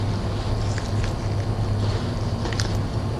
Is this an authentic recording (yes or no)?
yes